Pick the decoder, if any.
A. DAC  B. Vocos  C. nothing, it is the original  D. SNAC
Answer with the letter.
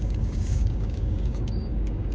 A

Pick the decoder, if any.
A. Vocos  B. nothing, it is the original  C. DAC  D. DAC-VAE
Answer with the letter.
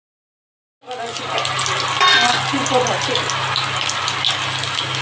B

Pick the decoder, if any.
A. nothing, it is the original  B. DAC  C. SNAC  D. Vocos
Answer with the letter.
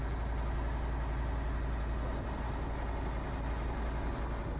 A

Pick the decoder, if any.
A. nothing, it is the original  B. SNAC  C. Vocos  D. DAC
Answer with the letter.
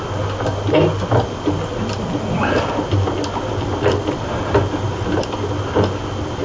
A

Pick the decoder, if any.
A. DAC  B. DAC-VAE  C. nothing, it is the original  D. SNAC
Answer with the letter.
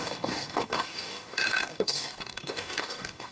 A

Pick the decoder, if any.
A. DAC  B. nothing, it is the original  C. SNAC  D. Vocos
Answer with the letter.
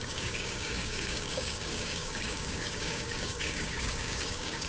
A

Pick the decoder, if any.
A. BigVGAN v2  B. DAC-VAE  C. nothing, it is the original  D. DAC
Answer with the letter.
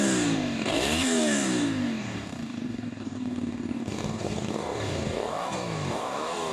D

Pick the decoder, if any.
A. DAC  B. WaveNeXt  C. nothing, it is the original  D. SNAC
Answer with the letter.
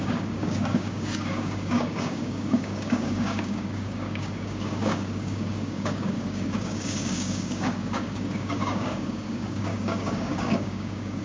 A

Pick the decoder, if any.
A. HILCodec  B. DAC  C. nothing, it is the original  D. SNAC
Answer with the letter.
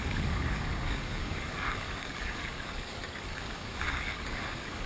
B